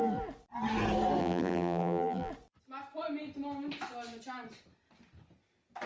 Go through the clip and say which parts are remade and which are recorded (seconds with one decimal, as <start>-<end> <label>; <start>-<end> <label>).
0.0-1.2 recorded; 1.2-2.3 remade; 2.3-5.9 recorded